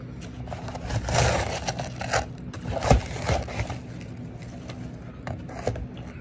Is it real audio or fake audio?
real